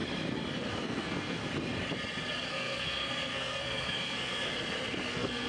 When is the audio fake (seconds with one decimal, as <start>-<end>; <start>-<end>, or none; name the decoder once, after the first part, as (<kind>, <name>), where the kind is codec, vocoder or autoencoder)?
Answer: 0.7-1.4 (codec, SNAC); 2.5-4.5; 5.1-5.5